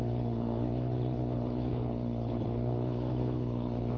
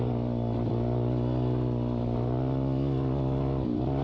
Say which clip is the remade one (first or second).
first